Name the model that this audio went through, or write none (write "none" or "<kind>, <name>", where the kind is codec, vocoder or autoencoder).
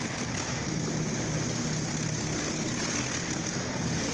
none